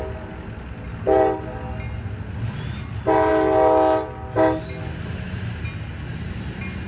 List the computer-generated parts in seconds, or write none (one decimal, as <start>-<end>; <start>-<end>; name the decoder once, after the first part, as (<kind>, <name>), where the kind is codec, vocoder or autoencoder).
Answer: none